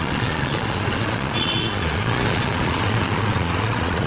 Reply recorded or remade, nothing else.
remade